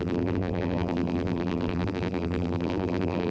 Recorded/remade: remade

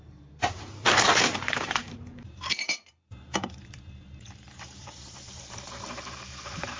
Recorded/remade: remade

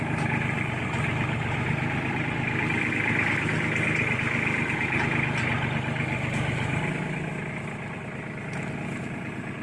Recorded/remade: recorded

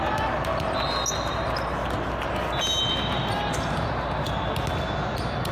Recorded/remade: recorded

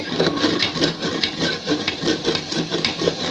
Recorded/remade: remade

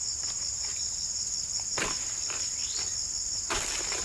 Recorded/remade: recorded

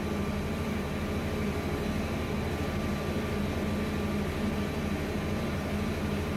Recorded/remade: recorded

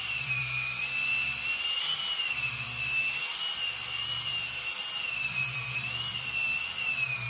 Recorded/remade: remade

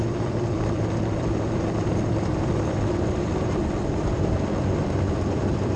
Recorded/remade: remade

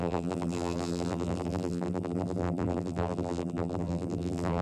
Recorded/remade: remade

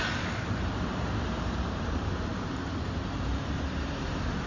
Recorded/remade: remade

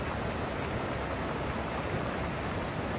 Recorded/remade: recorded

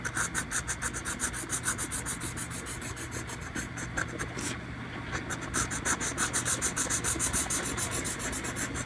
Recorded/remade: recorded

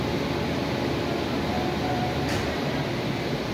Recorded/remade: recorded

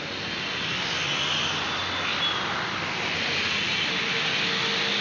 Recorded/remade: recorded